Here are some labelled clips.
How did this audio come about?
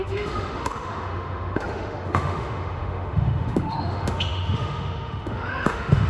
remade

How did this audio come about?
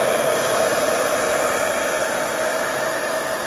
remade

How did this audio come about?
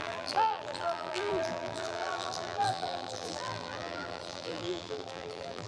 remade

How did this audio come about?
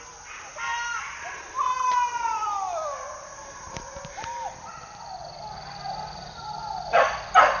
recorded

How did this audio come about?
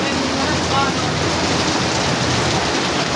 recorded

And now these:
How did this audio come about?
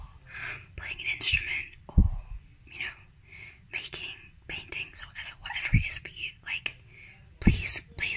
recorded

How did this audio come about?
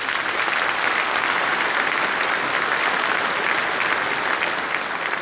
recorded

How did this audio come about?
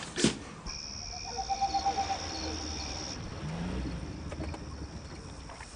recorded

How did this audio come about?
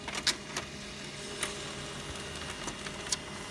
recorded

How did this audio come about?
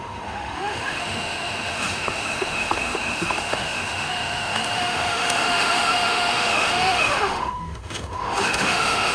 remade